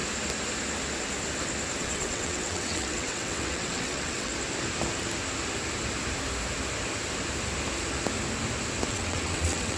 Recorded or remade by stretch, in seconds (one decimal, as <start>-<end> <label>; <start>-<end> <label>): 0.0-1.8 recorded; 1.8-4.3 remade; 4.3-8.9 recorded; 8.9-9.8 remade